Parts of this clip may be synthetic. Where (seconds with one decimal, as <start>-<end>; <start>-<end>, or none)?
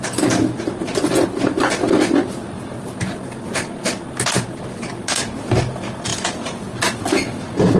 6.1-6.7